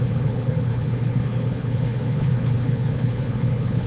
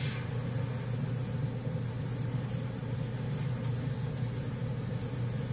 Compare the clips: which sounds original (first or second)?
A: second